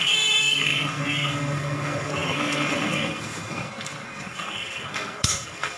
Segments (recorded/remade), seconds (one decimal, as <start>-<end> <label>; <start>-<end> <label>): 0.0-5.8 remade